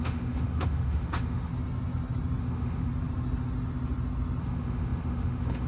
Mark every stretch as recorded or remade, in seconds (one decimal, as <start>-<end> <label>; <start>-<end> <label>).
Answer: 0.0-1.5 remade; 1.5-2.4 recorded; 2.4-2.9 remade; 2.9-4.4 recorded; 4.4-5.7 remade